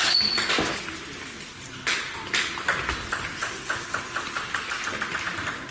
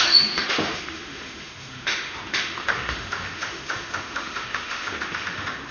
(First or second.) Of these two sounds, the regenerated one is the second